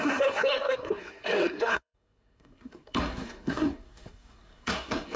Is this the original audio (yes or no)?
no